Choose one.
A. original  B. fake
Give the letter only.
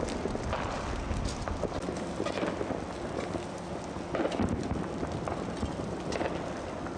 A